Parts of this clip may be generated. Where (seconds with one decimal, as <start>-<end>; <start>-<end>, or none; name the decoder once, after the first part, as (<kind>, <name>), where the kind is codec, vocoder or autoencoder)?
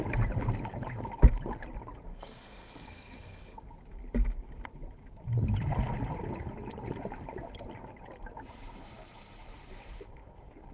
2.1-3.6 (codec, SNAC)